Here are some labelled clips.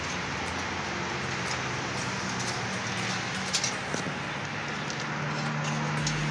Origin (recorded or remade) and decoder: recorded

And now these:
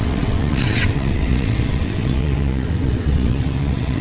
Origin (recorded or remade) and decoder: remade, vocoder, WaveNeXt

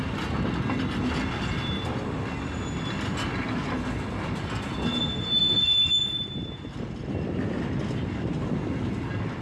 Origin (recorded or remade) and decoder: recorded